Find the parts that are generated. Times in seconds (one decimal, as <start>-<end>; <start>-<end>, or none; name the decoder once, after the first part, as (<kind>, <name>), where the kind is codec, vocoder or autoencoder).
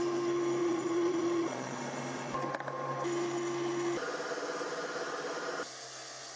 0.6-1.8 (vocoder, Vocos)